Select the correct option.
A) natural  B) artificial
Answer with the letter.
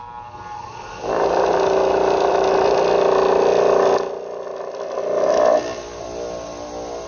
A